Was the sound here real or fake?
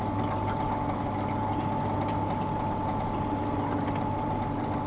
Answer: real